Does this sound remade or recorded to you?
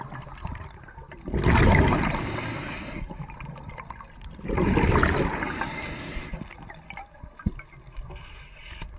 recorded